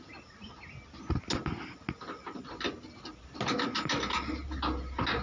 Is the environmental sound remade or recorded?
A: recorded